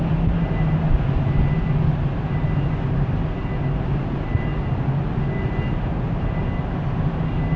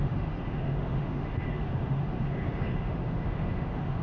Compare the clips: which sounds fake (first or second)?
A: second